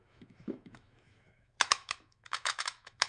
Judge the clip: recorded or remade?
remade